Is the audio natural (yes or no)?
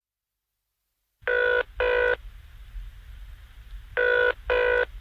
yes